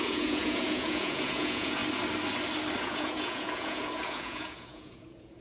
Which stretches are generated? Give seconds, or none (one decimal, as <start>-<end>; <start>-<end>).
0.0-1.8; 2.8-5.4